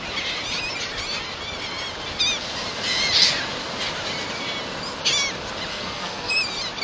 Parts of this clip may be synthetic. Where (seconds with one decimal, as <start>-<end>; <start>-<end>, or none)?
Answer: 5.7-6.3